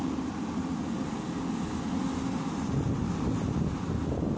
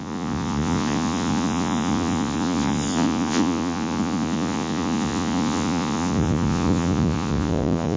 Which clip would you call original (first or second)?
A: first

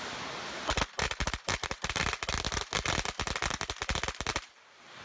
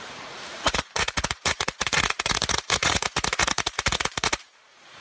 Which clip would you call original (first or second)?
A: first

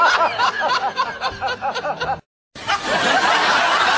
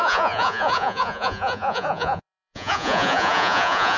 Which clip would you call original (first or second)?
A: first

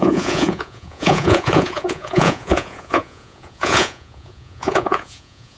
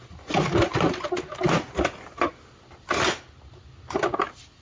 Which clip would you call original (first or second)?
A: second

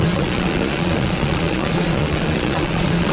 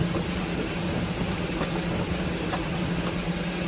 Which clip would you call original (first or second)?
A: second